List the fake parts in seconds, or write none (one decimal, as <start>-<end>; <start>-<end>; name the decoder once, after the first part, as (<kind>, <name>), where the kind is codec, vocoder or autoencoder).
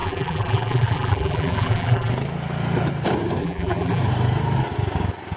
0.0-2.1 (vocoder, BigVGAN v2); 3.4-4.0